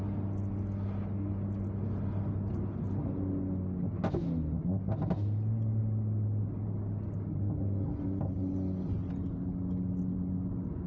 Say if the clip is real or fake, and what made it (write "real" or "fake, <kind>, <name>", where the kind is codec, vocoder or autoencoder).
real